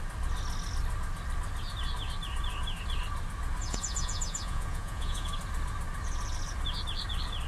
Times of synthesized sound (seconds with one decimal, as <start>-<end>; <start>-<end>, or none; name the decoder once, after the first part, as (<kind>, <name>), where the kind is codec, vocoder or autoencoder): 3.6-5.3 (vocoder, Vocos)